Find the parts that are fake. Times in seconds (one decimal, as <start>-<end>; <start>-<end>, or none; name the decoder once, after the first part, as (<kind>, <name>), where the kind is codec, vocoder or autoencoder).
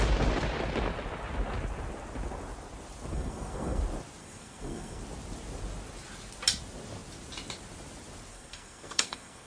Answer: 3.1-3.8 (codec, SNAC); 4.2-5.0; 8.3-9.5